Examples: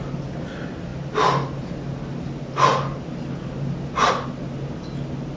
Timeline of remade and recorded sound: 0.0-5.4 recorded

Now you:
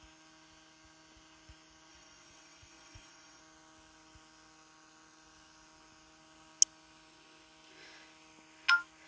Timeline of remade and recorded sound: 0.0-1.9 recorded; 1.9-3.4 remade; 3.4-9.1 recorded

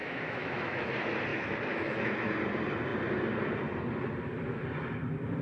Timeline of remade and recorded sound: 0.0-0.9 remade; 0.9-1.3 recorded; 1.3-2.1 remade; 2.1-5.4 recorded

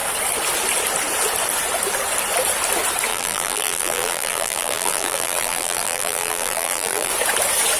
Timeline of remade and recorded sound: 0.0-3.1 recorded; 3.1-7.1 remade; 7.1-7.8 recorded

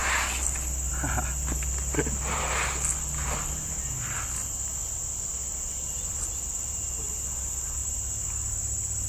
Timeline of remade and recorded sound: 0.0-9.1 recorded

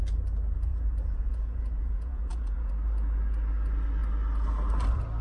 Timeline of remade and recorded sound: 0.0-0.7 recorded; 0.7-2.7 remade; 2.7-5.2 recorded